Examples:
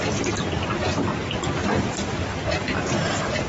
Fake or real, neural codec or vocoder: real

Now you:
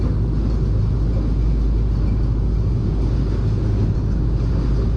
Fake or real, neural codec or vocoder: real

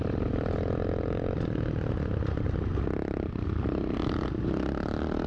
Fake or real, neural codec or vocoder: real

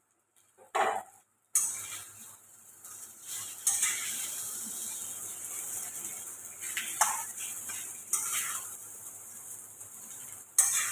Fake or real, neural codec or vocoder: real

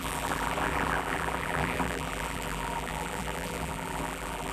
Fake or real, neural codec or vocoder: fake, vocoder, BigVGAN v2